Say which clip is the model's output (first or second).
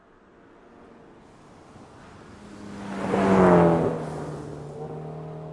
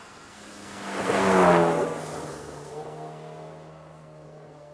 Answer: second